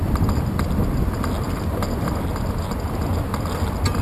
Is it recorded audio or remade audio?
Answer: recorded